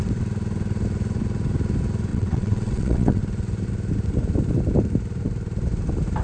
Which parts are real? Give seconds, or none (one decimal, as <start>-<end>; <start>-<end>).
0.0-2.1; 3.2-6.2